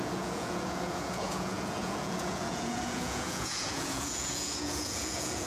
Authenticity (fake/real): fake